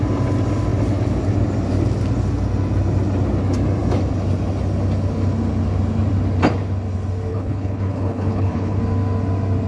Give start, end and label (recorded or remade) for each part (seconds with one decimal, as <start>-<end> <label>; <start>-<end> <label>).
0.0-7.3 recorded; 7.3-8.8 remade; 8.8-9.7 recorded

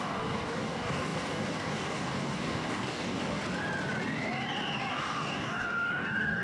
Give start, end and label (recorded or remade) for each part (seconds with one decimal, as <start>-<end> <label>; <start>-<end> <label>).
0.0-3.4 remade; 3.4-4.9 recorded; 4.9-6.4 remade

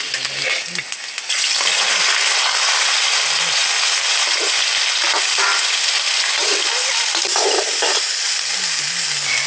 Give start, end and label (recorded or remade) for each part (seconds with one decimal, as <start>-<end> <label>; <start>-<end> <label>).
0.0-3.6 recorded; 3.6-8.1 remade; 8.1-9.5 recorded

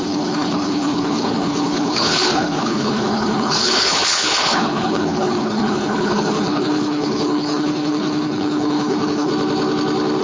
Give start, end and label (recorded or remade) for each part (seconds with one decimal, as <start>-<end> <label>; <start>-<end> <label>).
0.0-9.3 remade; 9.3-10.2 recorded

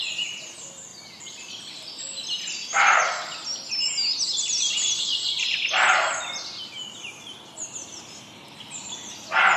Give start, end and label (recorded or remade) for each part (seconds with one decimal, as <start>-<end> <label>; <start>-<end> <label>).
0.0-9.6 recorded